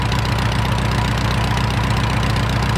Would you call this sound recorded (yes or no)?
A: yes